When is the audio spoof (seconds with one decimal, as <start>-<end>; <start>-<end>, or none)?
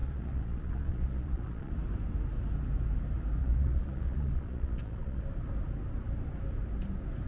0.0-1.7; 3.4-5.2